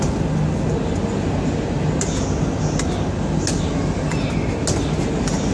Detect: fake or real real